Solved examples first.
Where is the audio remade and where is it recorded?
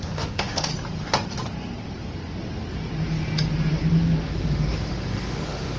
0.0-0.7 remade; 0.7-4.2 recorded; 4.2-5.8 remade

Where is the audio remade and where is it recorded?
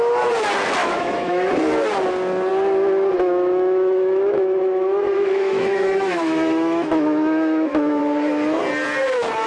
0.0-0.8 recorded; 0.8-1.5 remade; 1.5-3.1 recorded; 3.1-8.0 remade; 8.0-9.5 recorded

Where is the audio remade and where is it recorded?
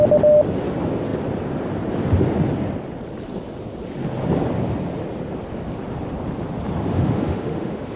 0.0-6.9 recorded; 6.9-8.0 remade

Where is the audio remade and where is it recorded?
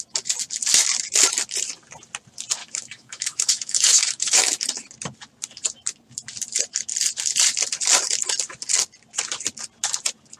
0.0-2.6 recorded; 2.6-4.4 remade; 4.4-10.4 recorded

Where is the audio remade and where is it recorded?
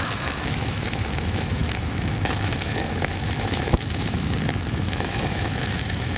0.0-6.2 remade